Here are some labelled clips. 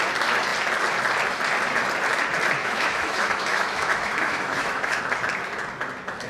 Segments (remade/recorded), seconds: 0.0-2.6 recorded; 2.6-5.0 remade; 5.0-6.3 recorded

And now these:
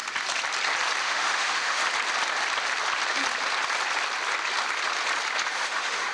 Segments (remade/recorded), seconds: 0.0-1.0 recorded; 1.0-1.8 remade; 1.8-5.5 recorded; 5.5-6.1 remade